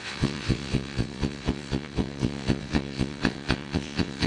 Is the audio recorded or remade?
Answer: remade